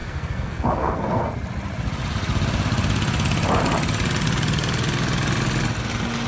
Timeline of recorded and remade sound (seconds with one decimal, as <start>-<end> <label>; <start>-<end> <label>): 0.0-1.3 remade; 1.3-6.3 recorded